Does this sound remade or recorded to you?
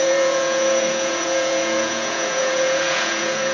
remade